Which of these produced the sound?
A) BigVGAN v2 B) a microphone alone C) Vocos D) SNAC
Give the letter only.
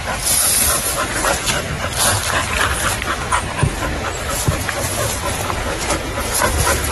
B